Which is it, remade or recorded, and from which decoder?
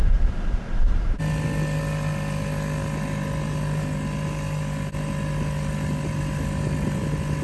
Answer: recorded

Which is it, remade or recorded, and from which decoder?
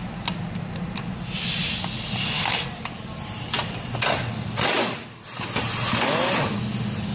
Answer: recorded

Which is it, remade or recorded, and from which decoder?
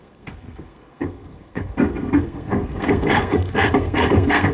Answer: remade, codec, SNAC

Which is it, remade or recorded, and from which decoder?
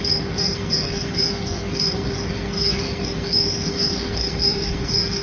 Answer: remade, codec, SNAC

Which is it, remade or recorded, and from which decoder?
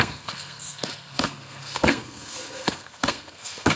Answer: remade, codec, SNAC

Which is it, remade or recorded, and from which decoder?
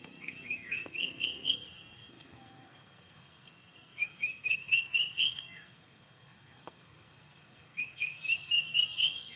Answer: remade, codec, SNAC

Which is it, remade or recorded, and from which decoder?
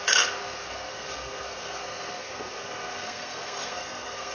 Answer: remade, codec, SNAC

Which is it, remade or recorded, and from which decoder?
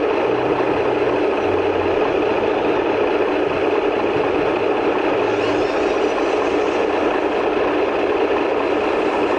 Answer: recorded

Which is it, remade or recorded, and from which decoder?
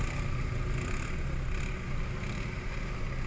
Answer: recorded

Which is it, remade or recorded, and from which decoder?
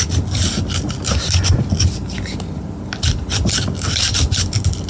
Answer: recorded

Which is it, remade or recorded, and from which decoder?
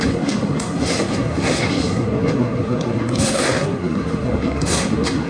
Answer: remade, codec, SNAC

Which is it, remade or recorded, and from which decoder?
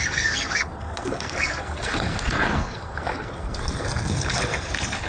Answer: remade, codec, SNAC